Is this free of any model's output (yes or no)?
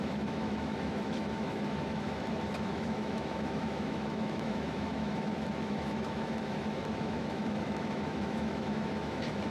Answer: no